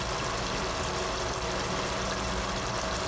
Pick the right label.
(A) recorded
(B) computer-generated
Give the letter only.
A